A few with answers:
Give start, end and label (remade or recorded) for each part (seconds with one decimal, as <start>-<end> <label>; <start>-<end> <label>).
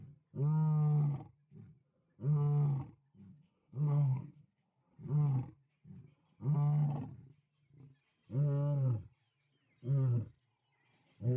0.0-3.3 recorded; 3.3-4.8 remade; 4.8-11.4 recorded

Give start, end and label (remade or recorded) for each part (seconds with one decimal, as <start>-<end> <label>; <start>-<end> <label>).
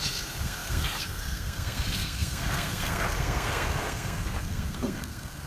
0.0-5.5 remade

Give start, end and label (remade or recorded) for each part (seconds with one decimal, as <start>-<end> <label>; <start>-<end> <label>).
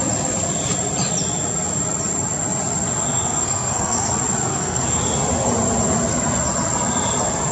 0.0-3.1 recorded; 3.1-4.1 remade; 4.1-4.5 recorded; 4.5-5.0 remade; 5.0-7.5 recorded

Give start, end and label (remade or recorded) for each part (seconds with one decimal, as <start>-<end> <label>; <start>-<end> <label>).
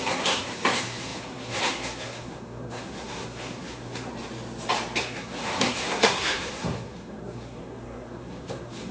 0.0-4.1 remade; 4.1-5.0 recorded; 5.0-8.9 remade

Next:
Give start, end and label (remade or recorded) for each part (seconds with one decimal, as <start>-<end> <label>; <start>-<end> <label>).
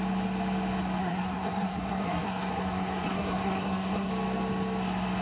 0.0-1.0 recorded; 1.0-4.1 remade; 4.1-5.2 recorded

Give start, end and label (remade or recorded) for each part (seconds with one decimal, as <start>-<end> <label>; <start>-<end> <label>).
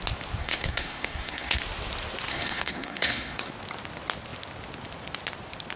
0.0-0.4 recorded; 0.4-1.6 remade; 1.6-2.3 recorded; 2.3-3.5 remade; 3.5-5.8 recorded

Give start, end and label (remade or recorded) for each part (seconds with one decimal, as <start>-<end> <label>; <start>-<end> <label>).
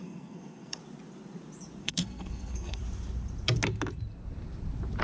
0.0-0.8 remade; 0.8-1.8 recorded; 1.8-2.8 remade; 2.8-5.0 recorded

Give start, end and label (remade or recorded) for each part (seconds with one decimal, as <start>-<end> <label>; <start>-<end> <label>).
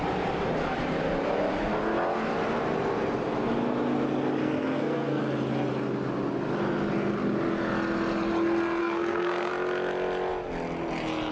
0.0-4.4 recorded; 4.4-5.2 remade; 5.2-8.8 recorded; 8.8-9.5 remade; 9.5-11.3 recorded